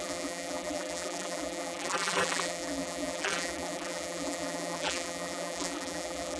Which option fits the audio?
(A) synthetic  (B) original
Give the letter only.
A